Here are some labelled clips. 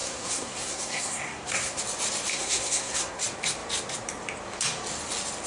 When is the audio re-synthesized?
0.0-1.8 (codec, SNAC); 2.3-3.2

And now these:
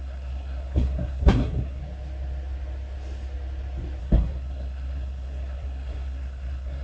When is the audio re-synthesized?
0.0-1.8 (codec, SNAC); 4.0-6.8

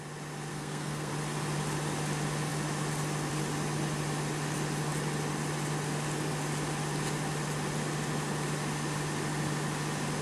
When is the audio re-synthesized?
0.5-1.1 (codec, SNAC)

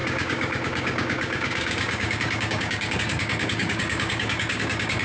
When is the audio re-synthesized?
0.0-5.0 (codec, DAC)

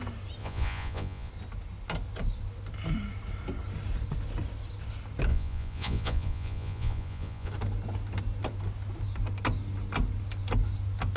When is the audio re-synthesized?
0.4-1.3 (vocoder, Vocos); 5.3-7.5

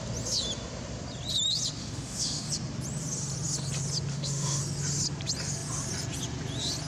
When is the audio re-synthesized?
1.8-2.5 (autoencoder, DAC-VAE); 4.1-4.6